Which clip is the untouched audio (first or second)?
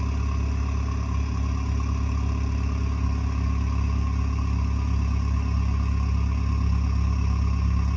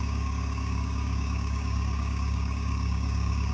first